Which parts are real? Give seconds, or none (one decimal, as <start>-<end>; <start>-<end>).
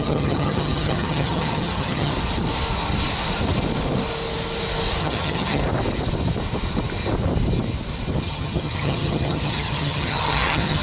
2.1-5.0; 5.6-8.2